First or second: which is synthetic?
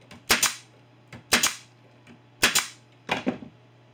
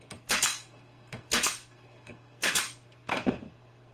second